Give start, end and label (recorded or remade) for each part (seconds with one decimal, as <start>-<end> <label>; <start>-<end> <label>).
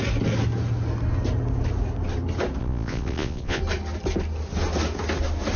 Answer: 0.0-2.6 recorded; 2.6-3.6 remade; 3.6-5.6 recorded